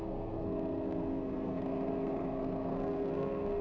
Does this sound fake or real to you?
fake